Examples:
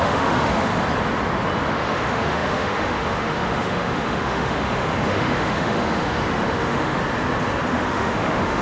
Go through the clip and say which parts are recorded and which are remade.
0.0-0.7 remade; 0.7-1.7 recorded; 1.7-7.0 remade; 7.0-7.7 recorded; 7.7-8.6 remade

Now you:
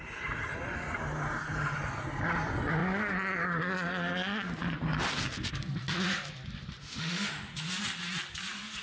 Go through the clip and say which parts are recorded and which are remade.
0.0-6.8 recorded; 6.8-7.5 remade; 7.5-8.8 recorded

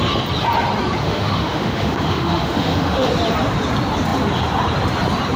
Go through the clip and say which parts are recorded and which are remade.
0.0-1.0 recorded; 1.0-3.1 remade; 3.1-5.4 recorded

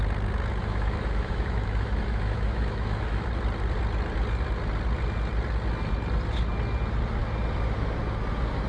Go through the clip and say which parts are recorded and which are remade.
0.0-0.6 recorded; 0.6-3.3 remade; 3.3-8.7 recorded

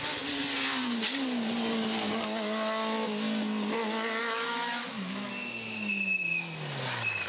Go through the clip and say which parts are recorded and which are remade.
0.0-4.2 recorded; 4.2-5.3 remade; 5.3-7.3 recorded

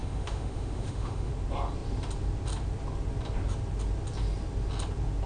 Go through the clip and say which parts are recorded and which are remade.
0.0-1.3 remade; 1.3-5.3 recorded